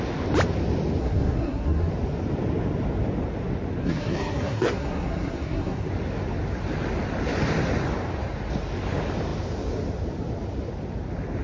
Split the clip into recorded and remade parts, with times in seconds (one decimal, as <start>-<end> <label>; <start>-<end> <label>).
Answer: 0.0-1.0 recorded; 1.0-1.9 remade; 1.9-3.8 recorded; 3.8-5.9 remade; 5.9-11.4 recorded